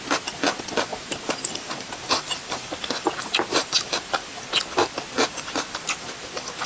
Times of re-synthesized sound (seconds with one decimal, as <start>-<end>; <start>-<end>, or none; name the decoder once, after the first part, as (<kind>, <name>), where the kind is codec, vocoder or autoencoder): 0.9-2.2 (vocoder, BigVGAN v2); 3.5-4.4